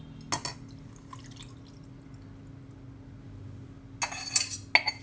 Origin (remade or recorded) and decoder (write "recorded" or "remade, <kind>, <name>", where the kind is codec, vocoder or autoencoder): recorded